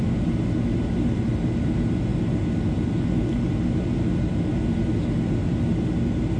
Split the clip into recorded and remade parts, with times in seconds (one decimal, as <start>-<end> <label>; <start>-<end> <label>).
0.0-6.4 recorded